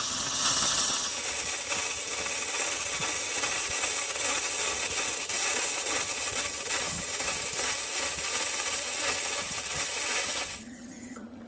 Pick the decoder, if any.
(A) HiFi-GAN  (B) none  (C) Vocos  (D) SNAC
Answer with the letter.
A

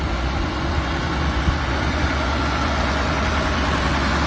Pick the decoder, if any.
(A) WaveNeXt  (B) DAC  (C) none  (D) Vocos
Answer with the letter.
D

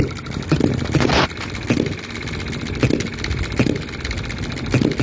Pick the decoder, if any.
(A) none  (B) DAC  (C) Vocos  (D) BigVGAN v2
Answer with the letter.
A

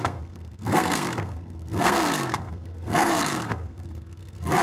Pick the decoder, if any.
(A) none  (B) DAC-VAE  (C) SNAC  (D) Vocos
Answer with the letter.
C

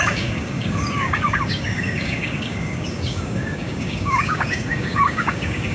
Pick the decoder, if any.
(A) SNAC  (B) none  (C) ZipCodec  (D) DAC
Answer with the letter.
D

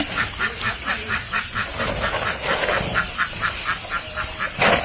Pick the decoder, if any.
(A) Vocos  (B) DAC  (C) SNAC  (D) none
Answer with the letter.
D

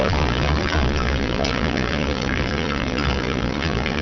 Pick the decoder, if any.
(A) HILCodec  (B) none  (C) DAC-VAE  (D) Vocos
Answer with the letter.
D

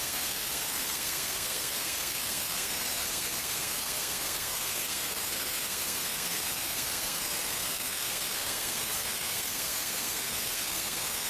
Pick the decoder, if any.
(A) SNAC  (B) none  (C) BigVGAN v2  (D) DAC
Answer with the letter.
A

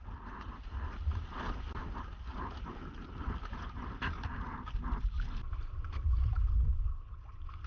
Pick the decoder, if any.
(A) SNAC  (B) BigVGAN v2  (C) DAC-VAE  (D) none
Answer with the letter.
D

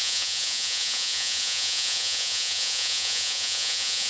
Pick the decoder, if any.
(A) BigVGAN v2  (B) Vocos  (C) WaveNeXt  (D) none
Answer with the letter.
B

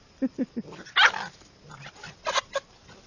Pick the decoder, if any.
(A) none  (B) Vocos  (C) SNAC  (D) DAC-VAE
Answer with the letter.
A